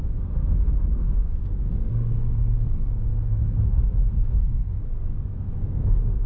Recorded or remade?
remade